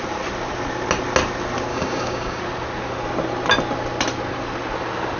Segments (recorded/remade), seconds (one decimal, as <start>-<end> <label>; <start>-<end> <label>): 0.0-1.7 recorded; 1.7-2.4 remade; 2.4-5.2 recorded